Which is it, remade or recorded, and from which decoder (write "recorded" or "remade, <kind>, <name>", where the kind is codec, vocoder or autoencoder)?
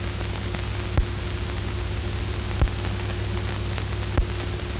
recorded